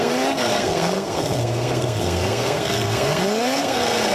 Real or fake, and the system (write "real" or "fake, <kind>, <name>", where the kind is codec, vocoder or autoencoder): fake, codec, SNAC